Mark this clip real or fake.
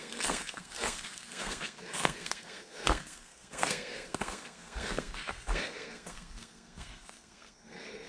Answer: fake